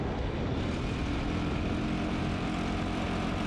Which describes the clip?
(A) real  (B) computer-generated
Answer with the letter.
B